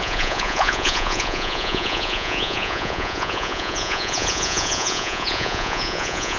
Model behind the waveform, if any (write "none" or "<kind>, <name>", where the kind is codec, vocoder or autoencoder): vocoder, Vocos